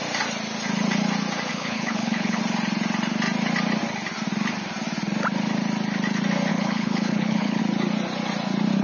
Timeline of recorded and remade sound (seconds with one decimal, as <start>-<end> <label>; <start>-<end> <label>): 0.0-1.5 recorded; 1.5-2.4 remade; 2.4-6.5 recorded; 6.5-7.6 remade; 7.6-8.8 recorded